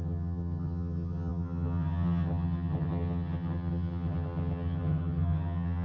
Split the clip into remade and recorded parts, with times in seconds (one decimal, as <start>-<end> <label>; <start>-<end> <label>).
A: 0.0-5.8 remade